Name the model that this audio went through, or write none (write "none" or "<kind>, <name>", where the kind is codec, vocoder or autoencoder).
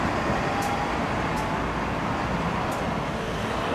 none